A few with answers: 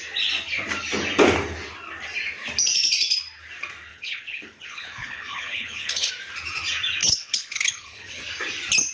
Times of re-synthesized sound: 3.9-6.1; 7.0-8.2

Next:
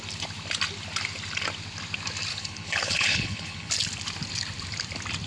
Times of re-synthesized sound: 2.3-3.7

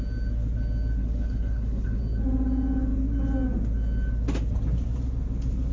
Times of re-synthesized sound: 1.0-2.0